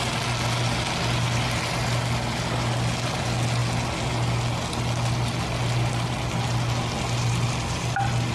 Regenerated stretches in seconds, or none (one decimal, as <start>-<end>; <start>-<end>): none

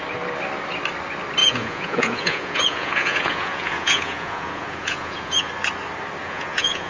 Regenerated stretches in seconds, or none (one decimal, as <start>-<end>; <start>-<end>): 1.4-5.5; 6.2-6.9